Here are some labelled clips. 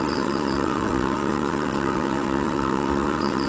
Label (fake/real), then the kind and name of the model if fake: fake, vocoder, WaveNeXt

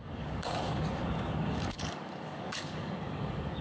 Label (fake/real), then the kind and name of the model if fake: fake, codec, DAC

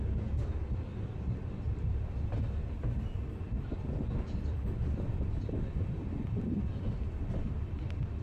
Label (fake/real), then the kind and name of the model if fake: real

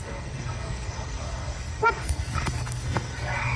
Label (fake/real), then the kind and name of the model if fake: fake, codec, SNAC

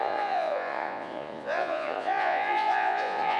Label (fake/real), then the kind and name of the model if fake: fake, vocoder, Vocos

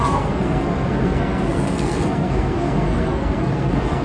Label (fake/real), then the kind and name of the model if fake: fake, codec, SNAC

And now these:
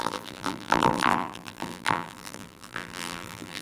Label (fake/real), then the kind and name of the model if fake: fake, vocoder, BigVGAN v2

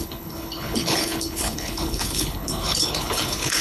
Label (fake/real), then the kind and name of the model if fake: fake, codec, HILCodec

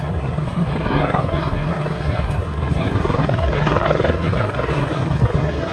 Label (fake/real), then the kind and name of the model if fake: fake, codec, SNAC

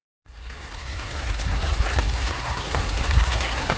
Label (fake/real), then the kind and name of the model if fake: fake, codec, SNAC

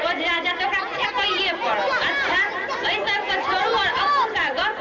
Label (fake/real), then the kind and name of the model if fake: real